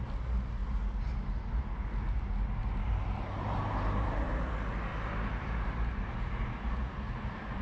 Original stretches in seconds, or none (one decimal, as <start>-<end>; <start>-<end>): 0.0-2.6; 4.5-4.9